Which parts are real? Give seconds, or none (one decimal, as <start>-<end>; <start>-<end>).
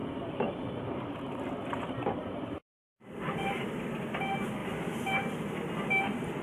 3.8-6.4